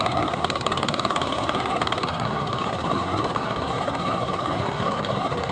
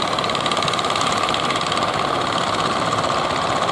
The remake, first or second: first